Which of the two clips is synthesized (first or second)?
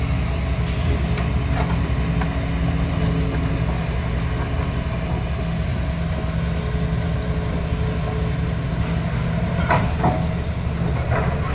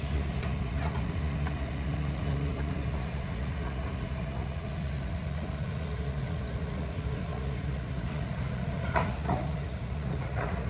second